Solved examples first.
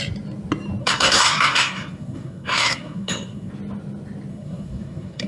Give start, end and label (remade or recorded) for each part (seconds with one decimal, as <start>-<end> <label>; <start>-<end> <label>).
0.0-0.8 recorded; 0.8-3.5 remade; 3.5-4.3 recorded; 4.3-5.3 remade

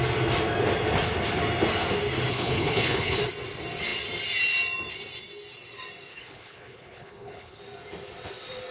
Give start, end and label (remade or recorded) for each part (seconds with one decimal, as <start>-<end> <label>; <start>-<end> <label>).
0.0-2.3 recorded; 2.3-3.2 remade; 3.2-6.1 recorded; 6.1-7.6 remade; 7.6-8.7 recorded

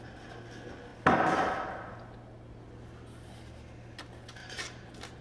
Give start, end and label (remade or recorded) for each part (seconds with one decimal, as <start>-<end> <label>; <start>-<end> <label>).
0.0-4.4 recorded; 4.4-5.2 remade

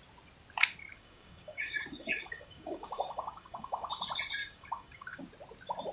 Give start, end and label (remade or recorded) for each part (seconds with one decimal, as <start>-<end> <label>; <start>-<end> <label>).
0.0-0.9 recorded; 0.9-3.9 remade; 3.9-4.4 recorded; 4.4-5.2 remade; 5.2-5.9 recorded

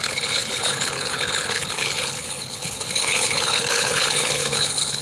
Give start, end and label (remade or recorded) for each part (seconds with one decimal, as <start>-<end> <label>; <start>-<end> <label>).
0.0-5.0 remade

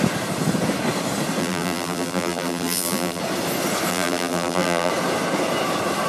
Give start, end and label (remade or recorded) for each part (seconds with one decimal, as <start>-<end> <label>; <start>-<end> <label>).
0.0-1.4 recorded; 1.4-3.2 remade; 3.2-3.9 recorded; 3.9-4.9 remade; 4.9-6.1 recorded